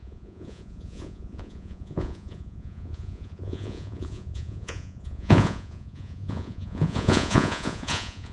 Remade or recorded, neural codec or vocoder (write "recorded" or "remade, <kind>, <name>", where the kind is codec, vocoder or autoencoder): remade, vocoder, Vocos